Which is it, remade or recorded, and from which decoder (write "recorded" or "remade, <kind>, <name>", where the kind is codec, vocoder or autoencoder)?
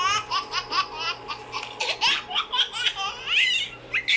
recorded